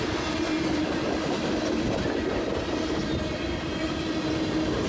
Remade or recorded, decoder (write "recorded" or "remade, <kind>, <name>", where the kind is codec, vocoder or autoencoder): recorded